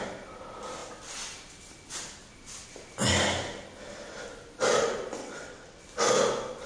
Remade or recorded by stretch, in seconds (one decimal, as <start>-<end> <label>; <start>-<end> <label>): 0.0-5.2 recorded; 5.2-5.8 remade; 5.8-6.7 recorded